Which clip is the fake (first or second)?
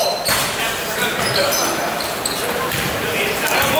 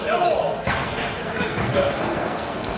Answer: second